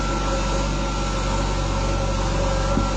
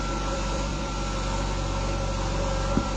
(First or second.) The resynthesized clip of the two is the second